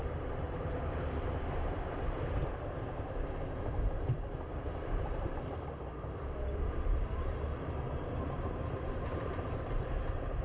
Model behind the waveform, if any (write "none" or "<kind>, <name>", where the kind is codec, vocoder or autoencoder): vocoder, BigVGAN v2